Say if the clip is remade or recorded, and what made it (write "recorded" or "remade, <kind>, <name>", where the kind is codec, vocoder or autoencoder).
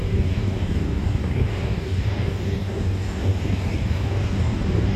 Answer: remade, codec, DAC